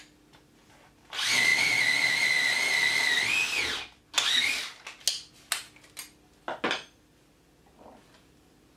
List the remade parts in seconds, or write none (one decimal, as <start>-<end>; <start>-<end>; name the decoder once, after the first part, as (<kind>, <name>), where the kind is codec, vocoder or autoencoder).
none